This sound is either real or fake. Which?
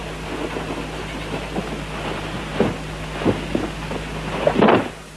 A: real